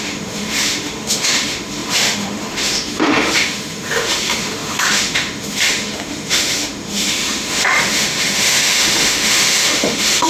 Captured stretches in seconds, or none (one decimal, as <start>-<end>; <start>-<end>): none